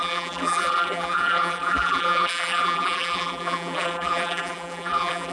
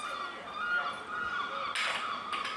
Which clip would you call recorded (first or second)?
second